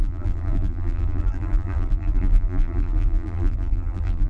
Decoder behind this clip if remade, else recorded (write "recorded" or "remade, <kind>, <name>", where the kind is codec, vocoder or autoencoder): remade, vocoder, BigVGAN v2